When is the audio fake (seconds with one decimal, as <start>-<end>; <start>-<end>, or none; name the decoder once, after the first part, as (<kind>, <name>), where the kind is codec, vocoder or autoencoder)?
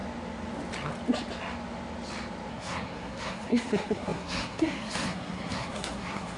2.5-6.4 (codec, SNAC)